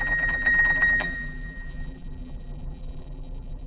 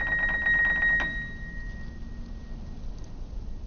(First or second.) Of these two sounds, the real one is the second